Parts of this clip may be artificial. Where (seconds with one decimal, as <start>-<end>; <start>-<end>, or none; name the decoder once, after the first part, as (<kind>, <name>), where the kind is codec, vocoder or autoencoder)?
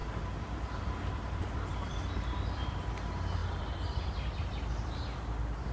0.0-2.7 (vocoder, BigVGAN v2); 3.4-4.6